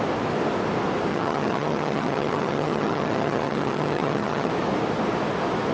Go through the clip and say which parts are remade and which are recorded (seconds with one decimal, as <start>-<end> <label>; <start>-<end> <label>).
0.0-1.1 recorded; 1.1-4.5 remade; 4.5-5.7 recorded